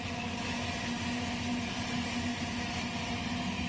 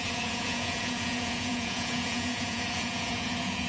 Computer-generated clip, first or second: second